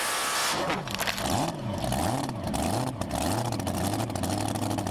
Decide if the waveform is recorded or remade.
recorded